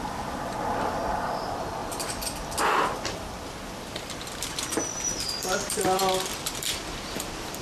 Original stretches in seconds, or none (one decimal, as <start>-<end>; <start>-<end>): 1.8-2.7

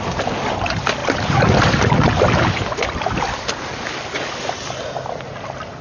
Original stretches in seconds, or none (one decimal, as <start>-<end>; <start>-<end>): 0.0-5.8

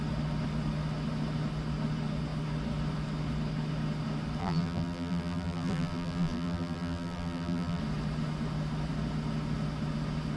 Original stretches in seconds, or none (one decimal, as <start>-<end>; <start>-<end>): 0.0-4.4; 7.8-10.4

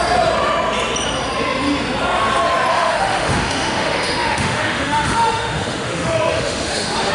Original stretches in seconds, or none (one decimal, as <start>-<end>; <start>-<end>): 0.0-2.7

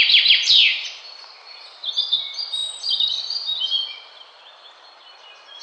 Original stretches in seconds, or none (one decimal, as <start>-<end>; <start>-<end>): 0.0-5.6